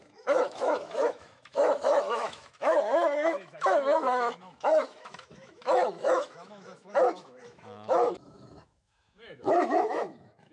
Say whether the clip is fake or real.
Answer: fake